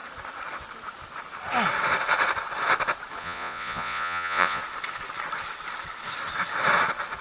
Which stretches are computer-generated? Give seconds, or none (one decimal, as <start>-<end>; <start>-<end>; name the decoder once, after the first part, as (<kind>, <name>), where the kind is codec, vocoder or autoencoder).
3.2-4.6 (vocoder, Vocos)